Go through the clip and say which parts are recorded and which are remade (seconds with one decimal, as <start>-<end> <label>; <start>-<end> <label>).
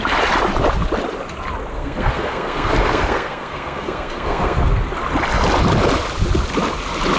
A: 0.0-1.7 recorded; 1.7-4.7 remade; 4.7-7.2 recorded